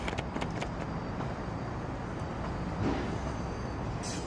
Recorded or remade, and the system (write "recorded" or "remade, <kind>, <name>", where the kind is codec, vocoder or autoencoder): recorded